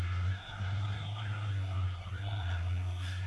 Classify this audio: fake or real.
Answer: fake